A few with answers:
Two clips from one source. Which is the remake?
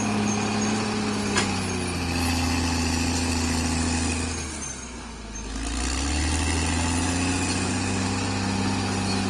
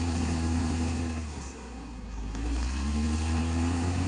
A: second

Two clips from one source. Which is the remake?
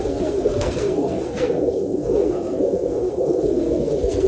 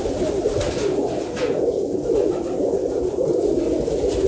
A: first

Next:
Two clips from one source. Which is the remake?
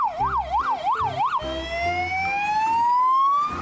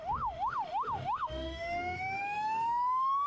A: second